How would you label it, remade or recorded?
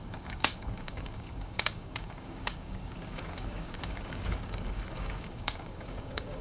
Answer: remade